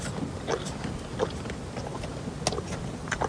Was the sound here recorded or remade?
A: recorded